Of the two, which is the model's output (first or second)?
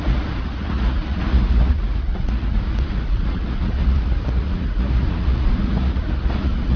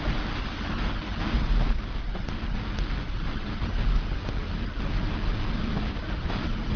first